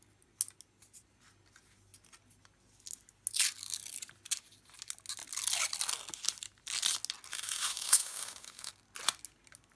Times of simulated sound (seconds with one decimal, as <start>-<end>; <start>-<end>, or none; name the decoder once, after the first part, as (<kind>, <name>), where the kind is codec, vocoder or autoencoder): 7.3-8.7 (autoencoder, DAC-VAE)